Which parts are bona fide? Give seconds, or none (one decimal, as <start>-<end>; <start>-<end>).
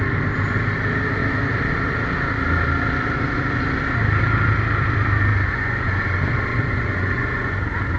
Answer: 0.0-5.3; 5.9-6.5; 7.6-8.0